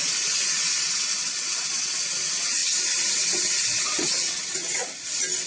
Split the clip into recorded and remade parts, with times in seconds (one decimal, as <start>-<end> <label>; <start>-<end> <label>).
0.0-4.8 remade; 4.8-5.5 recorded